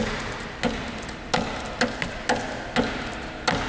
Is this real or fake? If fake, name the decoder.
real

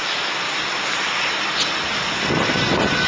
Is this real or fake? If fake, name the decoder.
real